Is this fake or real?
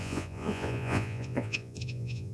fake